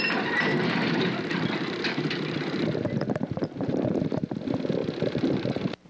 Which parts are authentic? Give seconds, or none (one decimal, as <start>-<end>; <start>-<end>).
0.0-0.5; 4.0-4.8